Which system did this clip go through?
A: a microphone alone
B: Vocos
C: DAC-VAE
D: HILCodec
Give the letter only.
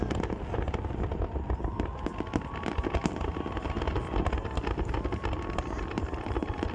A